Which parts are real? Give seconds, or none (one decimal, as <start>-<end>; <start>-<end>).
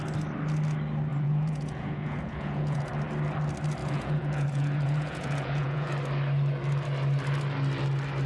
0.0-1.1; 2.9-3.8; 5.9-8.3